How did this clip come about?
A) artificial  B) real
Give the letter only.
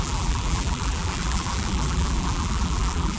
A